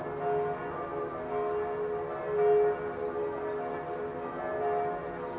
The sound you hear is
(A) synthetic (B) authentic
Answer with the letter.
B